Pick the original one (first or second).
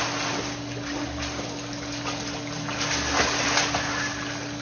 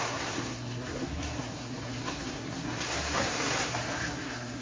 first